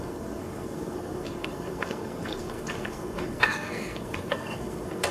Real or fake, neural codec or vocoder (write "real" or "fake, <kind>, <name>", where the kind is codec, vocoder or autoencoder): fake, codec, SNAC